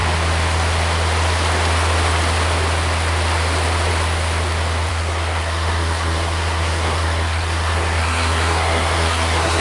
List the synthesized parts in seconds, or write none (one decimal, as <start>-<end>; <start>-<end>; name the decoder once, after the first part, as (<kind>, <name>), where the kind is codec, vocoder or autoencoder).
4.9-9.6 (codec, SNAC)

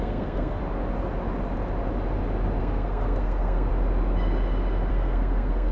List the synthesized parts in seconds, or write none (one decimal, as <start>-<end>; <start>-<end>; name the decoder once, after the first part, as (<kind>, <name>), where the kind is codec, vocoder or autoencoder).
0.0-0.6 (codec, SNAC); 2.6-3.7; 4.9-5.7

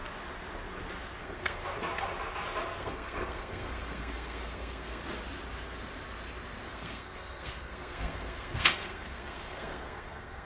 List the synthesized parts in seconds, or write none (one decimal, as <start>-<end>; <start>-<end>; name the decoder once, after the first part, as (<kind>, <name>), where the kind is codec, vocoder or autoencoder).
1.2-1.6 (codec, SNAC); 2.8-5.0; 6.6-10.5

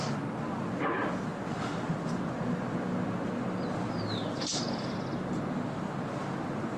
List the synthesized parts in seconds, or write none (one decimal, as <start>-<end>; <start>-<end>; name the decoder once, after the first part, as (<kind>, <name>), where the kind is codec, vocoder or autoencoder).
none

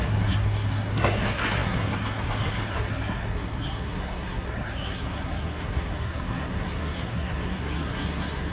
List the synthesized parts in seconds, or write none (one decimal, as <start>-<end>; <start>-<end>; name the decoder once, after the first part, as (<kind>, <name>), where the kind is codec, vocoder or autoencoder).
0.0-8.5 (codec, SNAC)